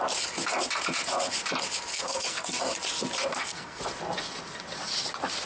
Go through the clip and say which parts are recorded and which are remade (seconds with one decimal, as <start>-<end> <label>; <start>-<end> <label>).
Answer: 0.0-1.9 recorded; 1.9-2.6 remade; 2.6-3.3 recorded; 3.3-3.8 remade; 3.8-5.5 recorded